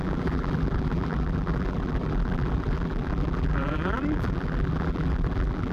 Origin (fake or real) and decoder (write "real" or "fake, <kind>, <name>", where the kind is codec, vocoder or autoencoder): fake, vocoder, BigVGAN v2